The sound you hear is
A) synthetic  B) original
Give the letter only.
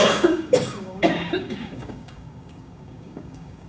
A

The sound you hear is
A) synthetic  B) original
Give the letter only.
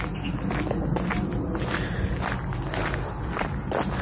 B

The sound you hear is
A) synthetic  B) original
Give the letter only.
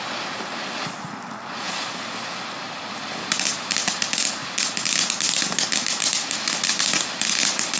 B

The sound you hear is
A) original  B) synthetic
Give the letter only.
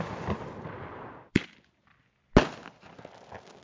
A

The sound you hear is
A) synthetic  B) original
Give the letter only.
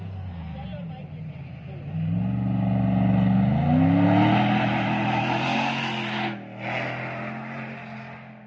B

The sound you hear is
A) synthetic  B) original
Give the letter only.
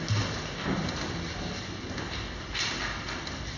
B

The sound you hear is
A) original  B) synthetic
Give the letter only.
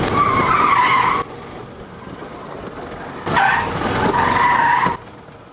A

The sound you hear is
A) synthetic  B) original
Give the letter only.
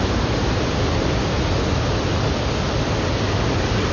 B